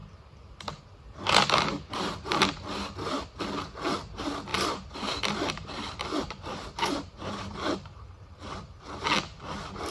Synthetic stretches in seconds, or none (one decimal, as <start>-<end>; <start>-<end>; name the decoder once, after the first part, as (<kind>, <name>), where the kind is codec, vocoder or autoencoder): 0.0-0.8 (vocoder, BigVGAN v2); 1.7-2.6; 4.5-8.5